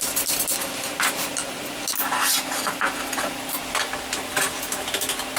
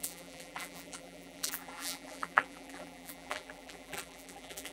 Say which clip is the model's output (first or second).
second